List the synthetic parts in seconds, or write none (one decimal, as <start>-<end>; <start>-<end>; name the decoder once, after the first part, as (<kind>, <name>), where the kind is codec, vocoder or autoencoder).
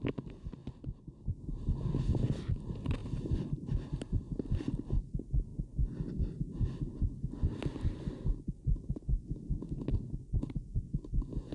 3.0-4.2 (vocoder, BigVGAN v2)